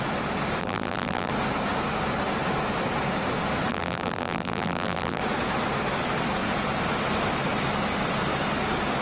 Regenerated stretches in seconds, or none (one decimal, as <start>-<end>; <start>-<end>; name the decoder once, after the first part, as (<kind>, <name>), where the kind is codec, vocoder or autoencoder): 0.6-1.3 (vocoder, BigVGAN v2); 3.7-5.2